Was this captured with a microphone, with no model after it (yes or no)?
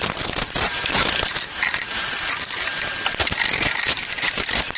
yes